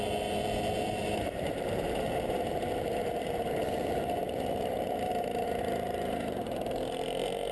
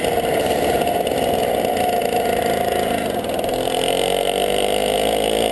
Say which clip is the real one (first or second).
second